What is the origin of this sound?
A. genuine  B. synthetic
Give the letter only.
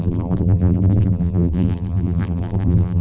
B